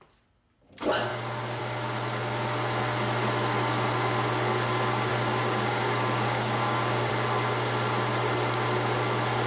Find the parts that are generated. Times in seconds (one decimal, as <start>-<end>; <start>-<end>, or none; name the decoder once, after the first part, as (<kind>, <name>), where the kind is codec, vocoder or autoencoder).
1.1-1.6 (codec, DAC); 5.1-7.1